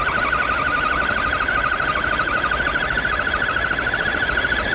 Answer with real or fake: real